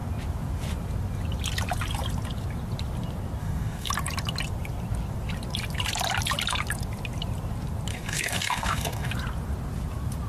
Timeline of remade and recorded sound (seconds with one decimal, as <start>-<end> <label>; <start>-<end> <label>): 0.0-3.4 recorded; 3.4-3.9 remade; 3.9-7.9 recorded; 7.9-9.1 remade; 9.1-10.3 recorded